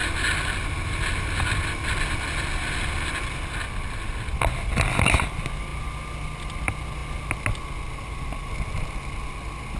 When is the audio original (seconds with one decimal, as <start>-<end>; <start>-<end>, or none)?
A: 0.0-9.8